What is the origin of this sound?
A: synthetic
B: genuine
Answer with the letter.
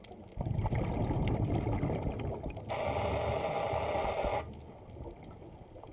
B